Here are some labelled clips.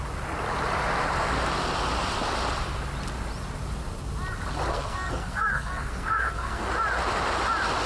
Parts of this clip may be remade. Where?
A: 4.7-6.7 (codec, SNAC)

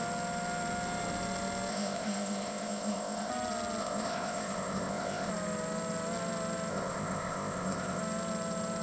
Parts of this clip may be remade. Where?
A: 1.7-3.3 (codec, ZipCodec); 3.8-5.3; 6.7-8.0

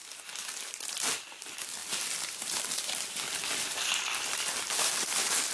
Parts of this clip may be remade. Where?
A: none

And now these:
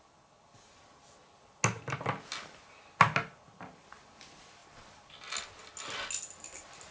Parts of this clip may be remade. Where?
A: none

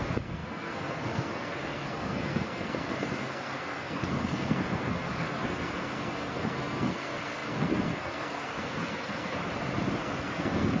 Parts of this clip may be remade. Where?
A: 0.0-9.4 (codec, SNAC); 10.0-10.8

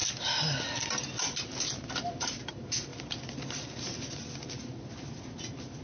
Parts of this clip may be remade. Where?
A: 0.0-0.6 (vocoder, BigVGAN v2)